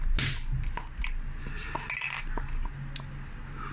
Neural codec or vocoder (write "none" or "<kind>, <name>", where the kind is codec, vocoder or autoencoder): none